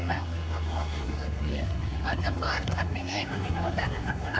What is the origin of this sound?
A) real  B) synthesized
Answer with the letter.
B